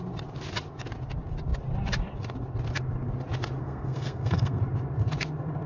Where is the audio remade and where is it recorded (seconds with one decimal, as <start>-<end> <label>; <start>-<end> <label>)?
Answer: 0.0-3.6 recorded; 3.6-4.6 remade; 4.6-5.7 recorded